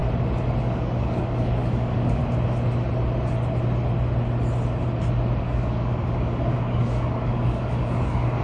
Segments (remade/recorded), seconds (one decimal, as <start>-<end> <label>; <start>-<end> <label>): 0.0-0.6 recorded; 0.6-2.2 remade; 2.2-5.4 recorded; 5.4-8.4 remade